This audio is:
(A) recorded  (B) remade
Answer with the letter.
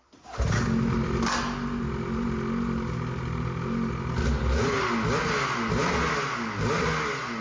A